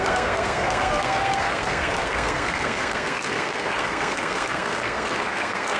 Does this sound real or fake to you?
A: fake